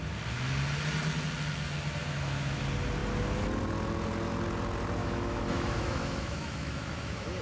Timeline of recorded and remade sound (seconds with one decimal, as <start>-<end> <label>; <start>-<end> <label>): 0.0-2.0 recorded; 2.0-2.6 remade; 2.6-5.0 recorded; 5.0-7.4 remade